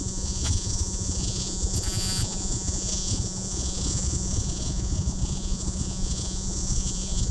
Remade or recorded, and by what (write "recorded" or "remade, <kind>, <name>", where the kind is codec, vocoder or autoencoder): remade, vocoder, Vocos